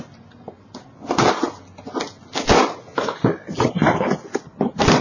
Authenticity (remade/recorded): recorded